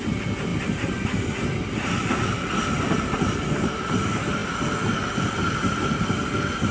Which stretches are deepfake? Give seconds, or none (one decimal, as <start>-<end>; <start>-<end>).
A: 0.5-3.7

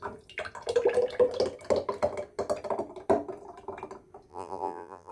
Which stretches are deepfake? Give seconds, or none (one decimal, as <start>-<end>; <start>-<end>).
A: 4.3-5.1

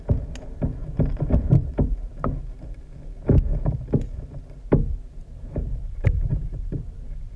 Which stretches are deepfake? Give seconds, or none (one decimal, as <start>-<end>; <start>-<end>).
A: 0.8-2.1; 5.2-7.0

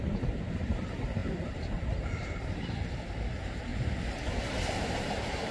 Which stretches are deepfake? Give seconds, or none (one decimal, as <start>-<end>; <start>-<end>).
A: 0.0-3.7; 4.8-5.5

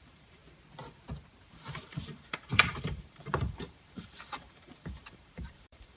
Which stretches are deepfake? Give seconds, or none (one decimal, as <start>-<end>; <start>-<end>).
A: 0.0-0.4; 1.4-6.0

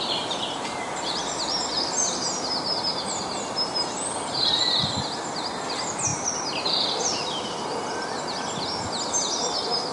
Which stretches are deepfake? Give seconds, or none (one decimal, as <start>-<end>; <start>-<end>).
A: 0.0-4.6; 5.6-6.1; 9.2-9.9